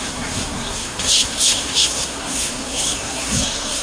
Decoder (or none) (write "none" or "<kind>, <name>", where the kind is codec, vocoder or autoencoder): codec, SNAC